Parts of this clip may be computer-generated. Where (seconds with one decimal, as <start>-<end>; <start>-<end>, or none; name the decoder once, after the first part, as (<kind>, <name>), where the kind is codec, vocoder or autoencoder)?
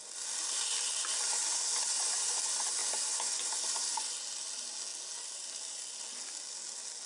none